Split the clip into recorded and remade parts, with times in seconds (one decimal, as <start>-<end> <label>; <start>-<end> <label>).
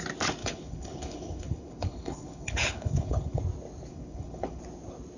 0.0-0.4 recorded; 0.4-3.4 remade; 3.4-3.9 recorded; 3.9-4.6 remade; 4.6-5.2 recorded